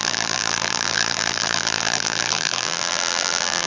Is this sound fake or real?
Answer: fake